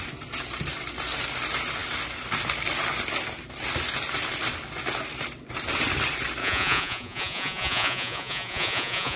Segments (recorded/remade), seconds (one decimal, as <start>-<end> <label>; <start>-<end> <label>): 0.0-6.4 recorded; 6.4-9.2 remade